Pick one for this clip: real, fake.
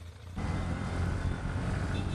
fake